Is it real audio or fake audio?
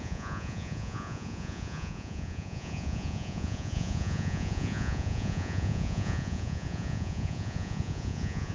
fake